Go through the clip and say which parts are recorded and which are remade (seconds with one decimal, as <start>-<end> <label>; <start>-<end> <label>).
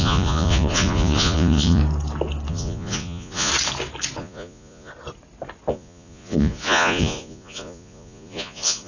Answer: 0.0-1.8 remade; 1.8-2.5 recorded; 2.5-3.5 remade; 3.5-4.2 recorded; 4.2-4.9 remade; 4.9-5.7 recorded; 5.7-8.9 remade